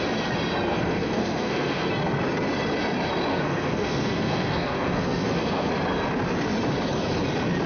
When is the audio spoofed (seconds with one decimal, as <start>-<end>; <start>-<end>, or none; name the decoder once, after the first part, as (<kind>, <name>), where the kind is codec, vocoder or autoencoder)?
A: 0.7-1.9 (codec, SNAC); 3.3-5.7